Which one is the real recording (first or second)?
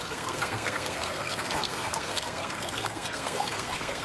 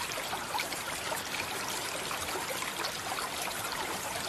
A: second